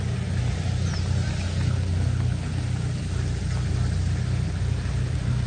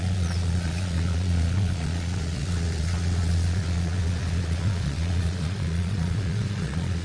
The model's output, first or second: second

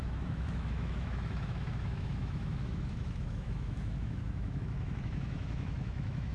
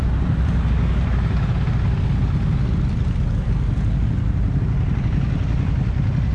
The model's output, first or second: first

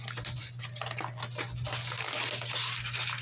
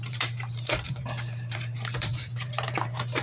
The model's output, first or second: second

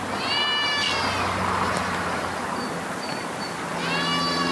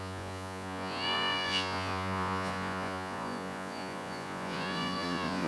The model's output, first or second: second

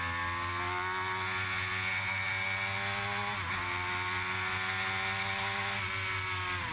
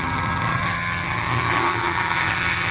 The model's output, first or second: second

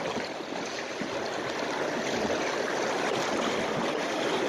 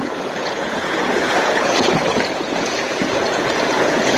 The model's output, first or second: second